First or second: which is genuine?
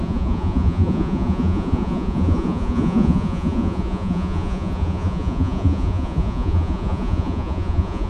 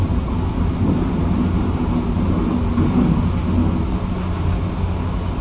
second